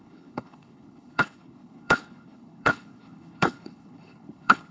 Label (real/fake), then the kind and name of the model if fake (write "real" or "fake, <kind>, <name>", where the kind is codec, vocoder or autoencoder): fake, codec, HILCodec